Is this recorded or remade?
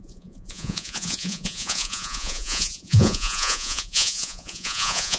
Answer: remade